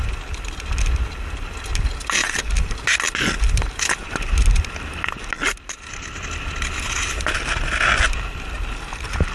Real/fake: real